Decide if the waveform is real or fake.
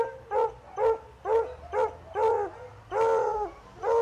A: real